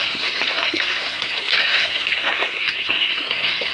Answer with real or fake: fake